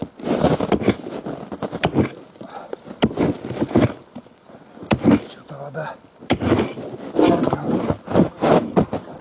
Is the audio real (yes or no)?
yes